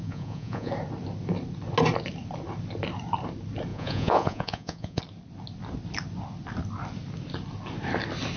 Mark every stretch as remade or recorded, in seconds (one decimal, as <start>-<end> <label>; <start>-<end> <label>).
0.0-0.7 remade; 0.7-3.7 recorded; 3.7-5.0 remade; 5.0-8.4 recorded